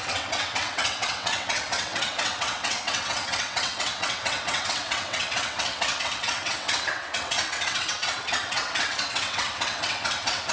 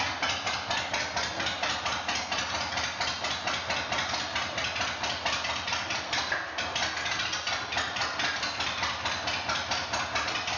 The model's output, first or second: first